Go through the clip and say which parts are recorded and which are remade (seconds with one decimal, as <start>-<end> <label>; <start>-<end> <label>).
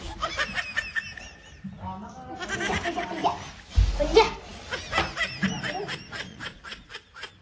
0.0-6.3 recorded; 6.3-6.9 remade; 6.9-7.4 recorded